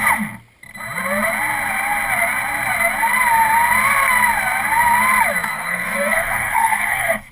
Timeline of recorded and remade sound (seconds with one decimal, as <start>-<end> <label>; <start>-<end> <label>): 0.0-5.5 recorded; 5.5-7.3 remade